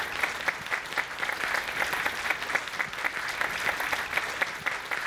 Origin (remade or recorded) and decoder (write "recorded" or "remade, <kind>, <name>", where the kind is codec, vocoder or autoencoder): recorded